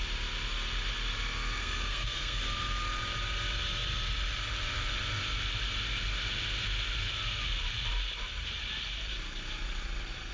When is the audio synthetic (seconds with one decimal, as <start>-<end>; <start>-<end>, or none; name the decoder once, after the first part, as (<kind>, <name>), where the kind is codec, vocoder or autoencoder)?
1.6-2.4 (codec, SNAC)

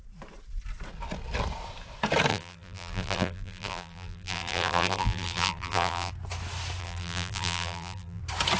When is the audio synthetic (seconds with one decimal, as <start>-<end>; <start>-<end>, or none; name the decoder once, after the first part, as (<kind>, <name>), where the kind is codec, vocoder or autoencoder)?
2.3-6.1 (vocoder, BigVGAN v2); 6.8-8.2

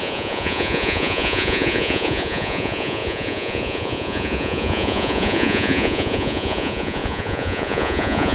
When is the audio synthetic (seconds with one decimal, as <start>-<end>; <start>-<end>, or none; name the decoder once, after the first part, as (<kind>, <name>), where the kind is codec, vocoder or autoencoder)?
0.0-8.3 (vocoder, Vocos)

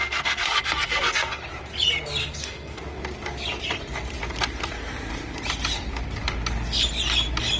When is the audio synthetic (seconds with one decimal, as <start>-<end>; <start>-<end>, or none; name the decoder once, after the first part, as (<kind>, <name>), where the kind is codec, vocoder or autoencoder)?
0.0-1.3 (codec, SNAC); 2.2-2.8

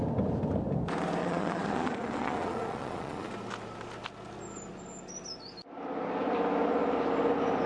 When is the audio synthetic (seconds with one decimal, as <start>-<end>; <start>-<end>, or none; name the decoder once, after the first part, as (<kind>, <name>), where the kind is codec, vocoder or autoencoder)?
1.2-3.3 (vocoder, Vocos)

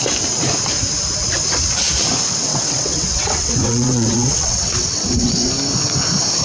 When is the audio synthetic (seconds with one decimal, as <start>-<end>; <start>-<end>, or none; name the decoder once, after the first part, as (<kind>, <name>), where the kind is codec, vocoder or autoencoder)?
2.5-5.5 (vocoder, WaveNeXt)